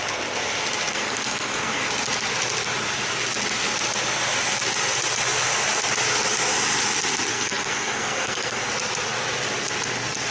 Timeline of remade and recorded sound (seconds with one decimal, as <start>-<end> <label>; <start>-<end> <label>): 0.0-0.9 recorded; 0.9-1.9 remade; 1.9-7.3 recorded; 7.3-8.7 remade; 8.7-10.3 recorded